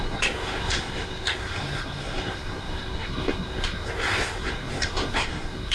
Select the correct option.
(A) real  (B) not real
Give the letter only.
B